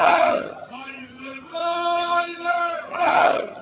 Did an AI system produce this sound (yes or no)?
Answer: yes